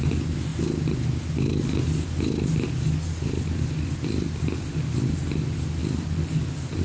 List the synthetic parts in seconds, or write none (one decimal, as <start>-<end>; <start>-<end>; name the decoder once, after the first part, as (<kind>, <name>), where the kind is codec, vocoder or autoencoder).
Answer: none